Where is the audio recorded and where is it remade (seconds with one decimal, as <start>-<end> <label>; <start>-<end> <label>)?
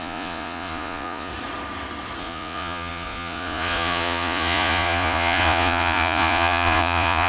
0.0-1.3 remade; 1.3-2.2 recorded; 2.2-7.3 remade